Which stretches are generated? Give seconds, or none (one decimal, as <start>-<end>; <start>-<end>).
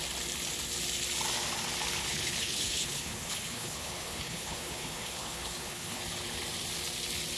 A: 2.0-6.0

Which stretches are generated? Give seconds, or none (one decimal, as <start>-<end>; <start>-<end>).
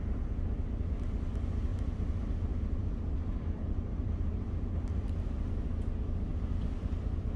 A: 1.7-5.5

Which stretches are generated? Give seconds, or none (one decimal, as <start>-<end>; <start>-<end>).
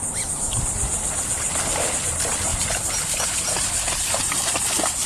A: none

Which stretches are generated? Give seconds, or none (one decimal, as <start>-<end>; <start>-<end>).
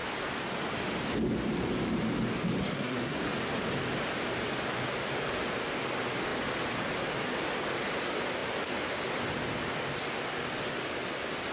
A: 2.6-3.2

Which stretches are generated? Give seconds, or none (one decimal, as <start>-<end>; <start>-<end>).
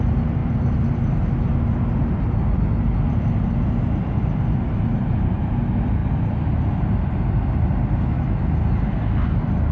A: none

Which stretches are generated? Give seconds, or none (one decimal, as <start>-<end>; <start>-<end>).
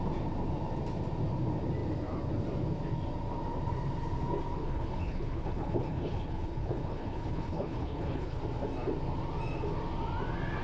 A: 4.6-8.4